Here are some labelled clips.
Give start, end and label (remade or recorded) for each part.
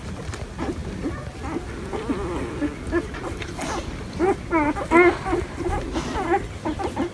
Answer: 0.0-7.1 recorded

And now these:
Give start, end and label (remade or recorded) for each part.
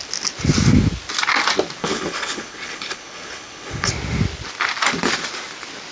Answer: 0.0-1.8 recorded; 1.8-3.9 remade; 3.9-5.9 recorded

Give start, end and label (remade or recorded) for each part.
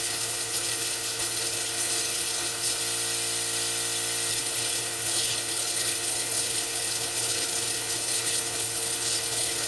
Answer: 0.0-2.8 remade; 2.8-4.3 recorded; 4.3-9.7 remade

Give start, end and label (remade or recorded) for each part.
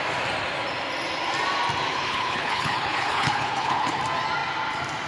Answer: 0.0-1.9 recorded; 1.9-4.0 remade; 4.0-5.1 recorded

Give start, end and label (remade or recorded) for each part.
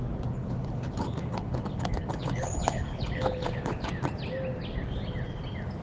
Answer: 0.0-0.4 recorded; 0.4-3.9 remade; 3.9-5.8 recorded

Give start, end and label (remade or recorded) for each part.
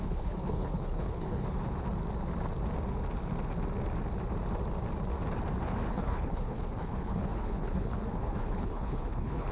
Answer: 0.0-1.9 remade; 1.9-5.9 recorded; 5.9-9.5 remade